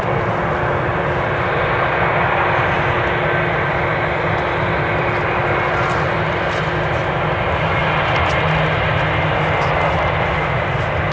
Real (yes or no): yes